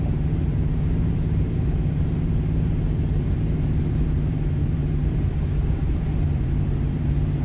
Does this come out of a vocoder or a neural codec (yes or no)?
yes